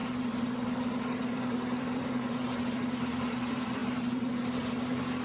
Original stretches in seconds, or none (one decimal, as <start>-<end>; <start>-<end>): none